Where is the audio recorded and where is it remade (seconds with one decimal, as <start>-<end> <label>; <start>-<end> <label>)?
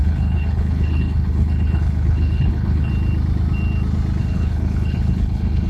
0.0-2.9 remade; 2.9-4.2 recorded; 4.2-5.7 remade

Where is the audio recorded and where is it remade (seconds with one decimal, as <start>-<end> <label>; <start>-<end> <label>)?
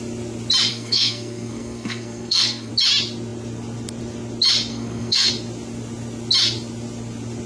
0.0-0.7 recorded; 0.7-2.7 remade; 2.7-4.7 recorded; 4.7-5.3 remade; 5.3-7.5 recorded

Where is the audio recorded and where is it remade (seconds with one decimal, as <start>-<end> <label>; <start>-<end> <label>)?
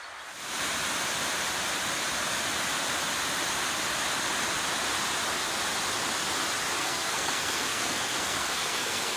0.0-6.8 recorded; 6.8-9.2 remade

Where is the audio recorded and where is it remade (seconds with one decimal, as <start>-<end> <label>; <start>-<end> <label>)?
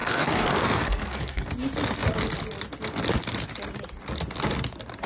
0.0-1.5 remade; 1.5-5.1 recorded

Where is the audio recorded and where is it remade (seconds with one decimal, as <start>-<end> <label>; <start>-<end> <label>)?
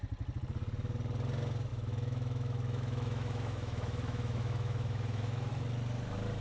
0.0-1.7 recorded; 1.7-5.5 remade; 5.5-6.4 recorded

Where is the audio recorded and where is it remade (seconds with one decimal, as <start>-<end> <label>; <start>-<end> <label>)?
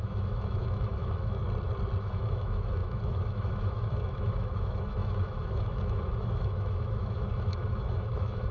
0.0-1.4 remade; 1.4-2.0 recorded; 2.0-8.5 remade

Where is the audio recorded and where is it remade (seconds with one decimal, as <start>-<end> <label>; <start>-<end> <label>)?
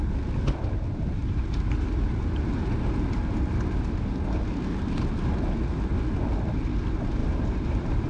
0.0-1.2 recorded; 1.2-2.4 remade; 2.4-7.2 recorded; 7.2-8.1 remade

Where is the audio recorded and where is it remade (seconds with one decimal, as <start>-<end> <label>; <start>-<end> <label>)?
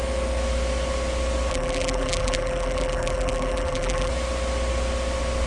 0.0-1.5 recorded; 1.5-4.1 remade; 4.1-5.5 recorded